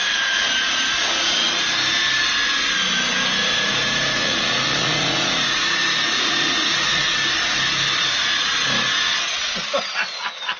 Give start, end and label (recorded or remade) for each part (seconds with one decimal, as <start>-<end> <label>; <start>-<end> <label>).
0.0-3.4 recorded; 3.4-7.0 remade; 7.0-10.6 recorded